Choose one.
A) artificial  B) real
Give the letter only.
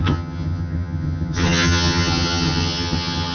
A